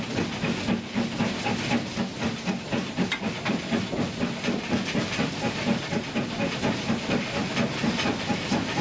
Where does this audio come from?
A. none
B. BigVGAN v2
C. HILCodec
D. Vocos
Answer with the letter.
A